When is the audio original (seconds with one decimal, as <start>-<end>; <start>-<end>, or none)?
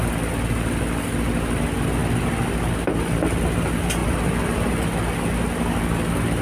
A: 0.0-6.4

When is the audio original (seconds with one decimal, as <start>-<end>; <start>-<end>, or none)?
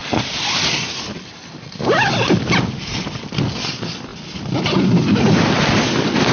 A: 3.5-4.1; 5.5-6.3